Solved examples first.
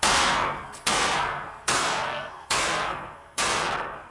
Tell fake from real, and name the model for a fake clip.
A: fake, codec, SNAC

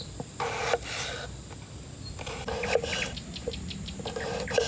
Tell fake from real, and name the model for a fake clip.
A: real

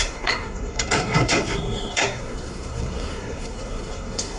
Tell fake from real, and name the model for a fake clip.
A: fake, codec, SNAC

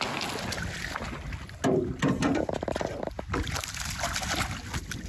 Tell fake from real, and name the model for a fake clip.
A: real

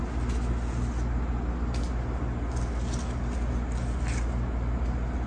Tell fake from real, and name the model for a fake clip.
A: real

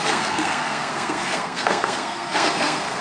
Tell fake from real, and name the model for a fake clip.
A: fake, codec, SNAC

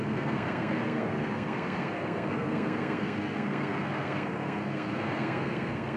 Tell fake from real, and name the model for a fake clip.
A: fake, codec, SNAC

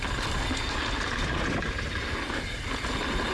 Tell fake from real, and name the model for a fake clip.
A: real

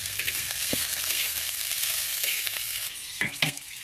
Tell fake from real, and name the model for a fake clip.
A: fake, codec, SNAC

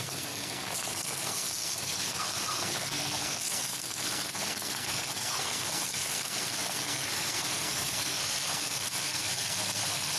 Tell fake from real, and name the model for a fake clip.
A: fake, codec, SNAC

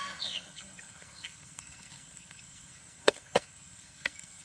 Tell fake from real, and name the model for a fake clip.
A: fake, codec, SNAC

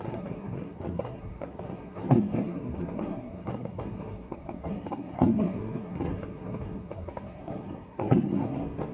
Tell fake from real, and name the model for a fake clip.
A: fake, codec, SNAC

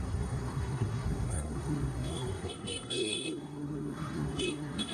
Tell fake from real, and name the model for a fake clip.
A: fake, codec, SNAC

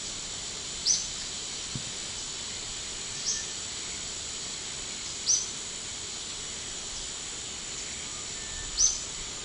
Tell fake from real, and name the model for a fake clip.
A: real